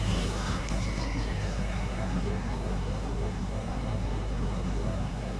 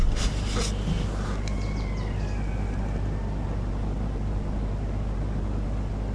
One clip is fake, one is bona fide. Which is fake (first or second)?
first